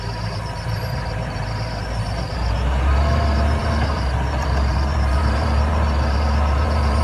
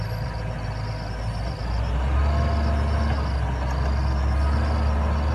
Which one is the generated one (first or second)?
first